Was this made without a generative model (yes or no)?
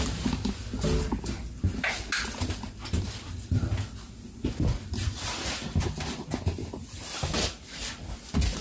yes